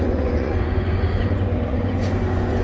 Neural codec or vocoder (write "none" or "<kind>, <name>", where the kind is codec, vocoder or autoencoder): vocoder, Vocos